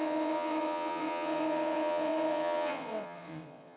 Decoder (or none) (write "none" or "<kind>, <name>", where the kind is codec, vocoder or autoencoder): vocoder, WaveNeXt